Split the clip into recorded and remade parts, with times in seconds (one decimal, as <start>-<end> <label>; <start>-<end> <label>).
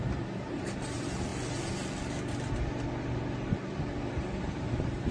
0.0-1.3 remade; 1.3-4.4 recorded; 4.4-5.1 remade